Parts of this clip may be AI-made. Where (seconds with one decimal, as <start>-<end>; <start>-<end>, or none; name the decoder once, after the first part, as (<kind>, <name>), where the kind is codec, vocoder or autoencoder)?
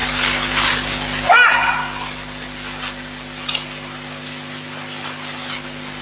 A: none